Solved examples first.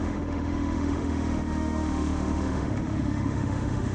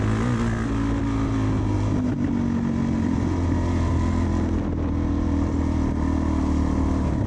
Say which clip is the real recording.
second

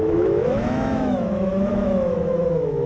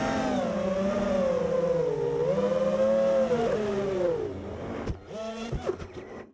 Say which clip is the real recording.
second